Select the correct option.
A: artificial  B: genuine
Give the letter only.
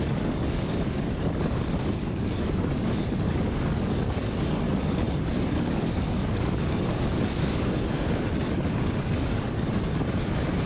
A